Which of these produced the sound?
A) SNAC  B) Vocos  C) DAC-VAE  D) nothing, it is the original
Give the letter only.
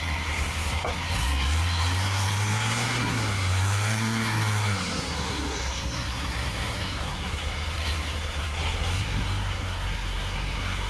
A